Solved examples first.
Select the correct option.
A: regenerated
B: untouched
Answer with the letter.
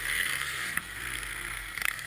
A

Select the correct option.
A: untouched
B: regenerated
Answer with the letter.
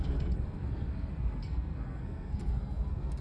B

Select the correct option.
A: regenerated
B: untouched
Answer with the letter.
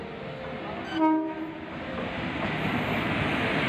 B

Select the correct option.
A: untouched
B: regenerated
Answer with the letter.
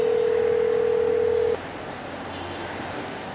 A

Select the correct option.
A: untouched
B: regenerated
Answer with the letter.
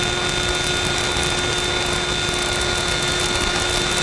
A